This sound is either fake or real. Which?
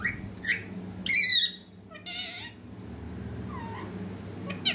real